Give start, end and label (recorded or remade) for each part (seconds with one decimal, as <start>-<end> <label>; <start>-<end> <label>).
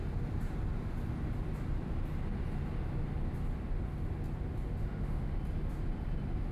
0.0-4.8 recorded; 4.8-5.4 remade; 5.4-6.5 recorded